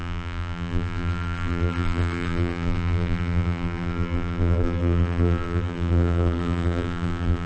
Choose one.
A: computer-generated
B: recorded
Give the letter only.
A